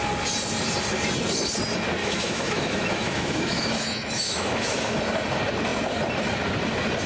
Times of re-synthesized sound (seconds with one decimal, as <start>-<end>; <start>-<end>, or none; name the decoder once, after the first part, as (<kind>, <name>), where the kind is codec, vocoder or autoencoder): 2.0-5.0 (autoencoder, DAC-VAE)